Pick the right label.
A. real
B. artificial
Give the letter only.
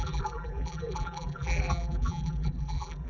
B